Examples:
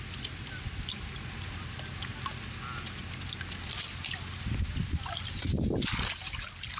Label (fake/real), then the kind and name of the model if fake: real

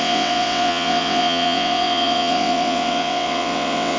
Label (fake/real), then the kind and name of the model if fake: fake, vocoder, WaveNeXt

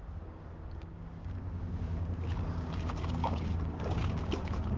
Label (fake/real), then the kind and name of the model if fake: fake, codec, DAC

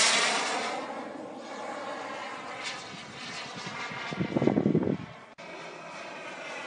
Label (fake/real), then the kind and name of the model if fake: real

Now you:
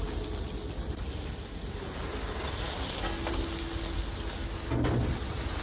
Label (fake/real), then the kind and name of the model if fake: real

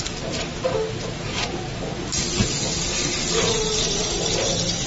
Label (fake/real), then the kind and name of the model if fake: real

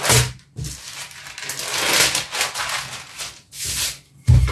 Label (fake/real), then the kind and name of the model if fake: real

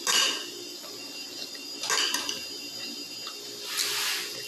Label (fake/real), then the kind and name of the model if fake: real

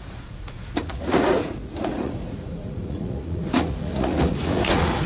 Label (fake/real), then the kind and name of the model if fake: fake, vocoder, Vocos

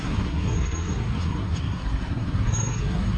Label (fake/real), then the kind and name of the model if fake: fake, codec, SNAC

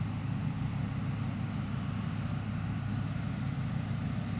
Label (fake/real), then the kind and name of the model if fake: real